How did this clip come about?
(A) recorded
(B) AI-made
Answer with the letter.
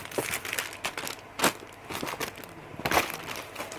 A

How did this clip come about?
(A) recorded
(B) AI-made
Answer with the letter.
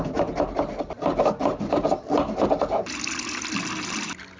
A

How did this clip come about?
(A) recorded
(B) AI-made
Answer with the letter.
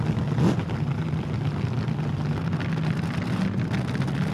A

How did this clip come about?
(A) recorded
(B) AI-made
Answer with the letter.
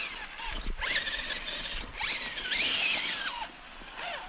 A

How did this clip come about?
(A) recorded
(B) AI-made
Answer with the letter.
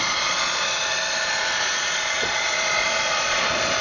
B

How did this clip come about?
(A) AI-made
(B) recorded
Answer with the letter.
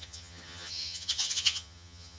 A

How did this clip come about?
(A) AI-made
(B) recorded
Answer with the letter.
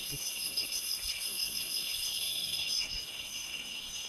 A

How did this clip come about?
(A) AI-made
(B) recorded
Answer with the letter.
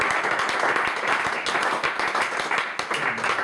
B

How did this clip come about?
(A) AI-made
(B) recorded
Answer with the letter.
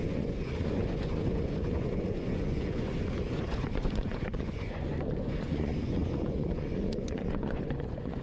A